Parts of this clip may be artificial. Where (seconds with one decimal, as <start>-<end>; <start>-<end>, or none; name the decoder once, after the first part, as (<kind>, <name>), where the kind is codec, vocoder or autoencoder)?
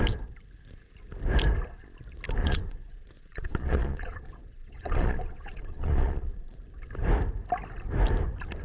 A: 2.4-6.6 (vocoder, Vocos)